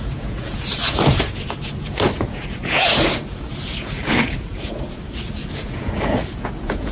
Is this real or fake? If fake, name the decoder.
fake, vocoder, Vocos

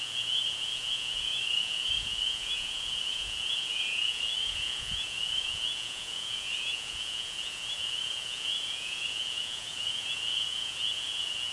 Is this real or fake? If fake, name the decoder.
fake, vocoder, Vocos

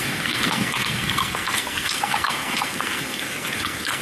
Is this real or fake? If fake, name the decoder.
fake, codec, SNAC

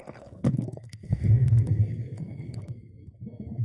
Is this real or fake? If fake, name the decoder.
fake, codec, SNAC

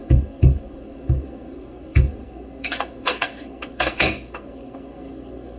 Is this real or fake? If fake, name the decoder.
fake, codec, SNAC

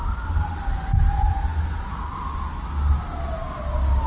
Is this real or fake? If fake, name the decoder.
real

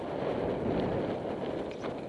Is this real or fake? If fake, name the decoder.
real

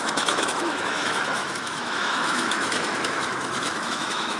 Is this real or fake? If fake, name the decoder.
fake, autoencoder, DAC-VAE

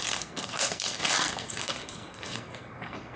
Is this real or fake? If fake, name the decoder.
fake, codec, SNAC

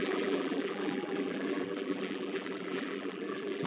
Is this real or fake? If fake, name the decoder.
fake, vocoder, BigVGAN v2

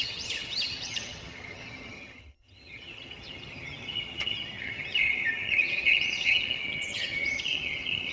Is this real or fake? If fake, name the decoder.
fake, vocoder, HiFi-GAN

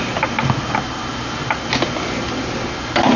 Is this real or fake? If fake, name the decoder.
real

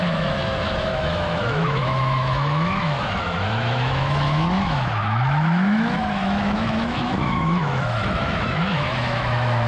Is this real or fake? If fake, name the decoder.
fake, autoencoder, DAC-VAE